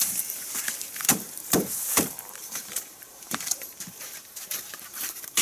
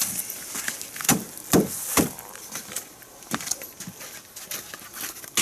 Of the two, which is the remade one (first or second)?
first